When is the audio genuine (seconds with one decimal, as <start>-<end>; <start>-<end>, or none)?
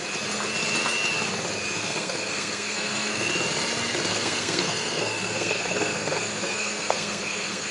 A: 0.0-1.8; 3.3-4.1